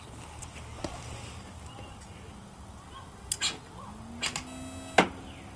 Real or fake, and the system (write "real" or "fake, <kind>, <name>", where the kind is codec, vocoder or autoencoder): real